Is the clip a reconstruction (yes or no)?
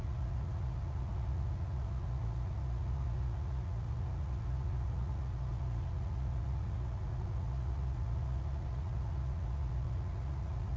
yes